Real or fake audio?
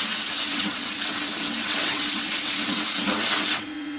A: fake